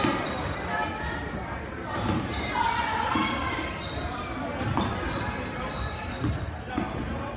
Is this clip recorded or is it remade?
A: recorded